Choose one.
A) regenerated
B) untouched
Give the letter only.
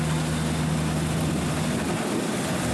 B